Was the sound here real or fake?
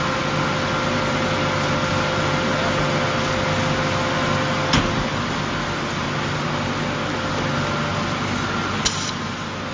real